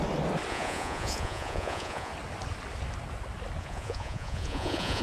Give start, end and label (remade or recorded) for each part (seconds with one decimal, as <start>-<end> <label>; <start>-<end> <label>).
0.0-0.5 recorded; 0.5-2.1 remade; 2.1-3.6 recorded; 3.6-5.0 remade